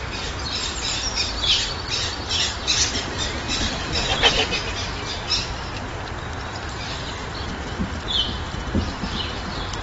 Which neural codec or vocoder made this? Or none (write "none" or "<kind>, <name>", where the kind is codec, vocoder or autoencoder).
none